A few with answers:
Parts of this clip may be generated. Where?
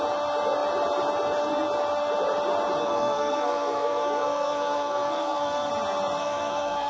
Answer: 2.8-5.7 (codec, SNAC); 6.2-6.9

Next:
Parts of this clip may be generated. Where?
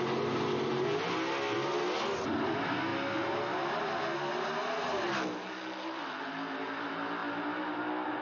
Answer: none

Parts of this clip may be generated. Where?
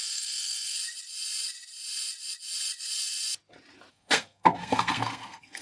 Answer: 0.0-0.8 (codec, SNAC); 3.9-5.6